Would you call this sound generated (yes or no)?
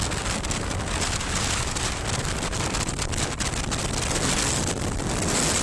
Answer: no